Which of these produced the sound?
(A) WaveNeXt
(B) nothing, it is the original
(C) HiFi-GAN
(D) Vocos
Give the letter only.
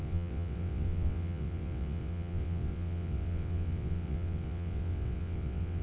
A